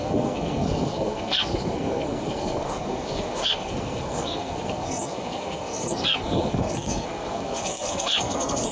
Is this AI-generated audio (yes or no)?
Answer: yes